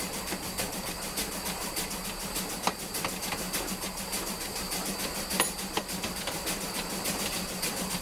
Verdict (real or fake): real